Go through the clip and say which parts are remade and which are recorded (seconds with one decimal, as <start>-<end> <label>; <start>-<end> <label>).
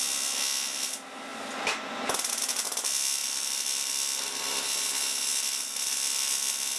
0.0-1.3 recorded; 1.3-2.3 remade; 2.3-3.2 recorded; 3.2-3.9 remade; 3.9-5.3 recorded; 5.3-6.3 remade; 6.3-6.8 recorded